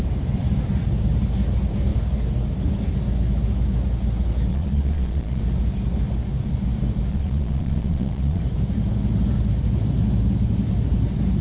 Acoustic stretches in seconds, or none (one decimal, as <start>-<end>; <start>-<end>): 0.0-4.5; 5.4-7.1; 8.4-11.4